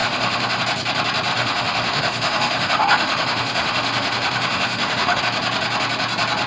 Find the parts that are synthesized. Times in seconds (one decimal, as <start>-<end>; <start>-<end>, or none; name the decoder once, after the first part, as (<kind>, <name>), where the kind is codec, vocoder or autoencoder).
0.0-0.6 (autoencoder, DAC-VAE); 1.3-5.2